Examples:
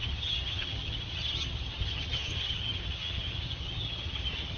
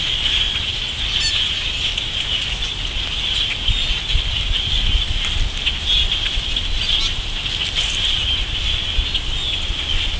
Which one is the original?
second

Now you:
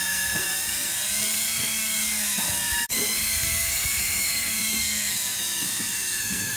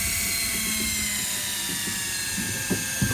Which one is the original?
second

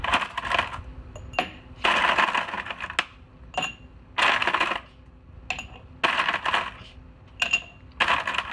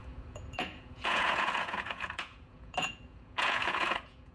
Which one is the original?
first